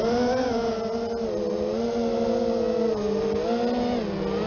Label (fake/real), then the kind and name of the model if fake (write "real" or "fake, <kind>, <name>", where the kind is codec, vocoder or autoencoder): real